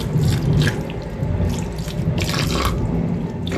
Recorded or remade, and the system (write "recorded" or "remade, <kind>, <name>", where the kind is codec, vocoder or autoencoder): recorded